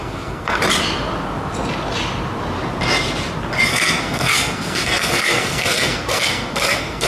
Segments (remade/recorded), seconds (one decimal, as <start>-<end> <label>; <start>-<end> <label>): 0.0-0.6 remade; 0.6-3.7 recorded; 3.7-7.1 remade